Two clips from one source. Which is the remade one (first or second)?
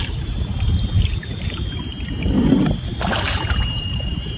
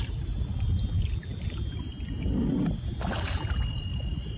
first